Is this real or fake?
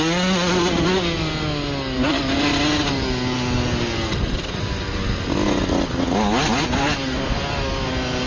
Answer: real